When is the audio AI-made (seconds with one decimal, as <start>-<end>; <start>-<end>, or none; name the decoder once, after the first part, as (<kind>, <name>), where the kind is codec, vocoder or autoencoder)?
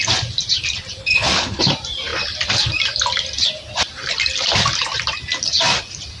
1.0-1.6 (codec, HILCodec)